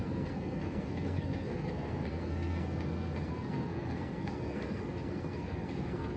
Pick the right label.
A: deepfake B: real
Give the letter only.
A